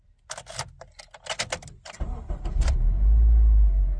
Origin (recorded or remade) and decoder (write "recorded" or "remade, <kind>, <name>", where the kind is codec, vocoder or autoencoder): recorded